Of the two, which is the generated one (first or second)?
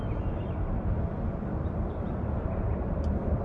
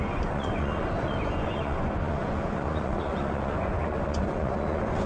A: second